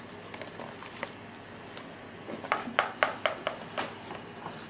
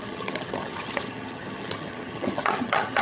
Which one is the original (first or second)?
first